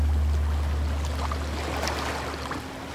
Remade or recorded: recorded